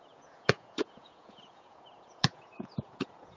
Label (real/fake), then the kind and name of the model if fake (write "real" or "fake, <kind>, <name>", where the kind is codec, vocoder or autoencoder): fake, vocoder, Vocos